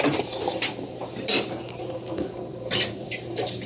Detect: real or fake fake